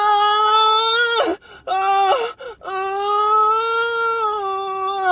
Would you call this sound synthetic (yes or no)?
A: no